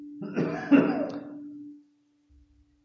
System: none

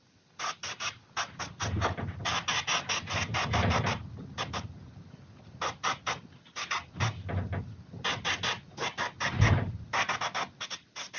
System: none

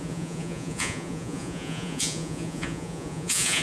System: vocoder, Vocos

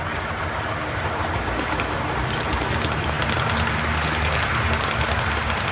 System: none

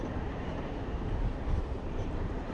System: vocoder, BigVGAN v2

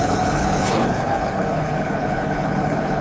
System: codec, HILCodec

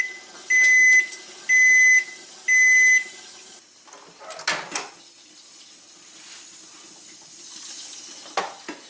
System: none